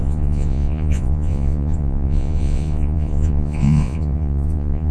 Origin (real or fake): fake